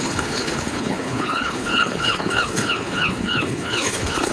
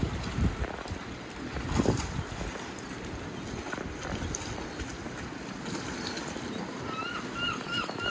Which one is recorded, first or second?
second